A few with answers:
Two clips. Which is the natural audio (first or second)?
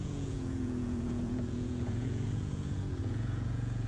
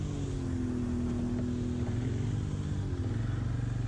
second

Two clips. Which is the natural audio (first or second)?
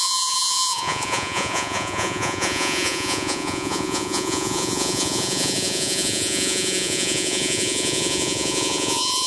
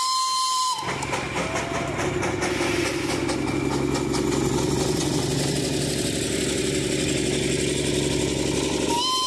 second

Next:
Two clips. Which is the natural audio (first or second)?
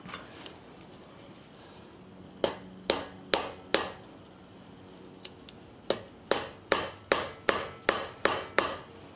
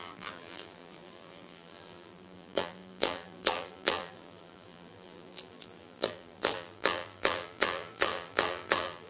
first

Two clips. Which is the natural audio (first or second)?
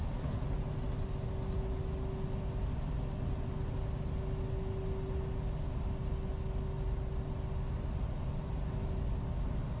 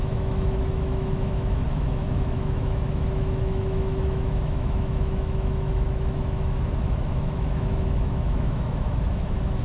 first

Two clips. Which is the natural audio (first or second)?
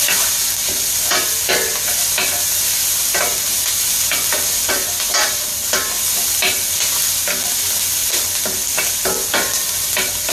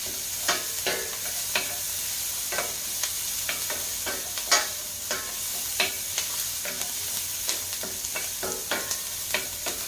first